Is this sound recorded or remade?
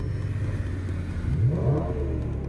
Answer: recorded